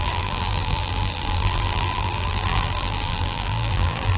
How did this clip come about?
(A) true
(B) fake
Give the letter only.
B